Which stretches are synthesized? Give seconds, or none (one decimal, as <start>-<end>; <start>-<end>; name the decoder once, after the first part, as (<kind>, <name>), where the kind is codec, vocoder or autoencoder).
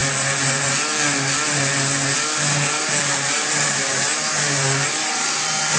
3.0-5.8 (vocoder, BigVGAN v2)